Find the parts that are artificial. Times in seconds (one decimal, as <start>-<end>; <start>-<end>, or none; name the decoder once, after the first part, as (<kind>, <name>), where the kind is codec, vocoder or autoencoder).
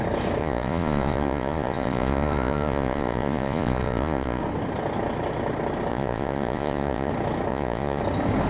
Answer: 0.4-4.4 (vocoder, Vocos); 5.9-7.1; 7.5-8.0